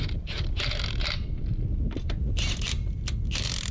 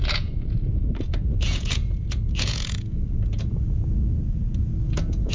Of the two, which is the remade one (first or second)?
second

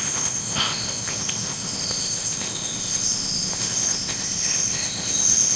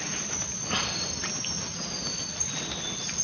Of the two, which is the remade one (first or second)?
first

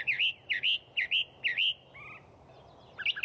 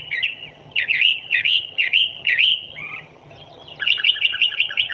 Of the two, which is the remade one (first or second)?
second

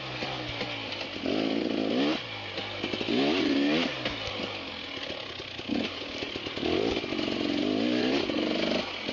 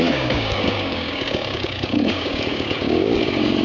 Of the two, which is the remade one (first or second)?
second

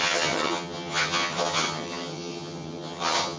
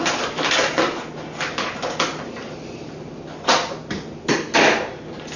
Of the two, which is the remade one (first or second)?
first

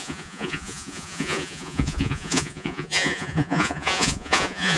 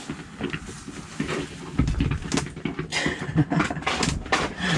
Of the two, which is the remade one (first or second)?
first